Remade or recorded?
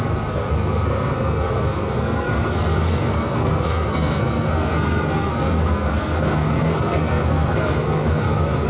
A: remade